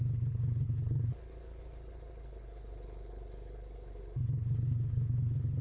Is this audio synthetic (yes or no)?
yes